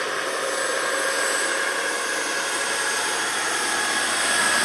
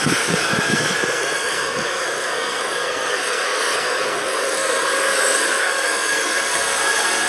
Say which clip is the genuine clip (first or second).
first